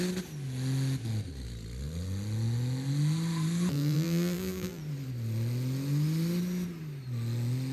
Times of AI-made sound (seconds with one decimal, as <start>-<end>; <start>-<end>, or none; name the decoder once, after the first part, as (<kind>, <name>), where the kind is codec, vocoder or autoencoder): 3.7-4.8 (vocoder, BigVGAN v2)